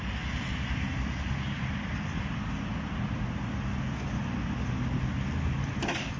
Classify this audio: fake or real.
real